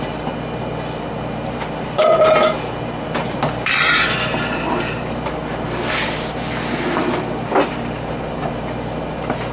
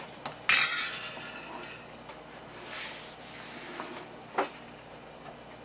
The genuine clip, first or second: second